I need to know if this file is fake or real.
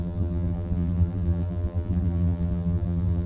fake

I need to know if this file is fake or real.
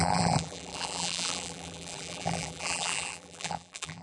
fake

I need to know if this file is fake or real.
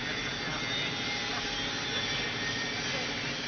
real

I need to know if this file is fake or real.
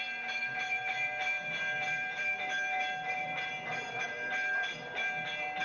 fake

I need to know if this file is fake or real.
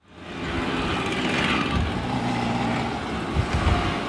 real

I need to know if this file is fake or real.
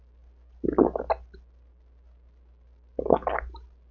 real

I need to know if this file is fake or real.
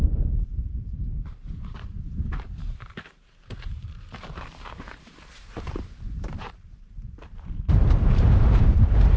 fake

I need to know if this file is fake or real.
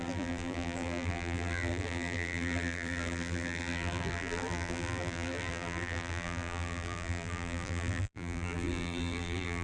fake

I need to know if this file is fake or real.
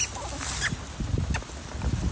real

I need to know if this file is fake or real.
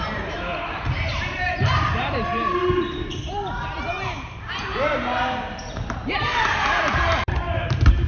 fake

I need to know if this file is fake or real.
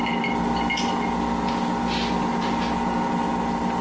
real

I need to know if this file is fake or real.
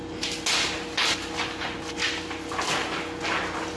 real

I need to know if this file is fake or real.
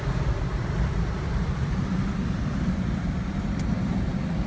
fake